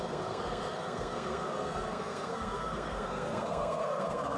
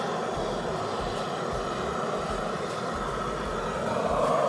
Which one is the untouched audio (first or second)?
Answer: second